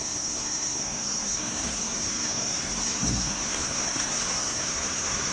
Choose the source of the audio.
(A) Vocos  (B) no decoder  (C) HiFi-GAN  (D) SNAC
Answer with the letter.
D